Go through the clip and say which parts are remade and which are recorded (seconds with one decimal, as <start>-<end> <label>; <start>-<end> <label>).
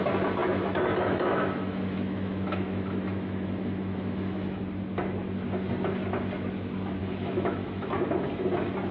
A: 0.0-0.4 recorded; 0.4-4.6 remade; 4.6-7.0 recorded; 7.0-7.9 remade; 7.9-8.9 recorded